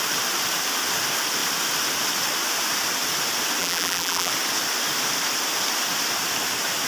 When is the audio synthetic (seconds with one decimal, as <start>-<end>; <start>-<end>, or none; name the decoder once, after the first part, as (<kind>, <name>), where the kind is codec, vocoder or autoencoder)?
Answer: 3.6-4.3 (vocoder, BigVGAN v2)